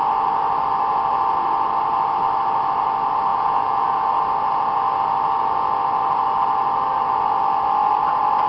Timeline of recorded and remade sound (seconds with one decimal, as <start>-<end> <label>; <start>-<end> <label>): 0.0-3.3 recorded; 3.3-4.1 remade; 4.1-8.5 recorded